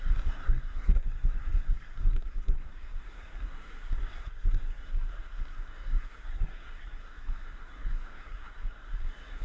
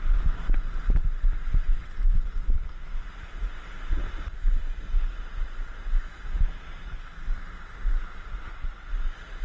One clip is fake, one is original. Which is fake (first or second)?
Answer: first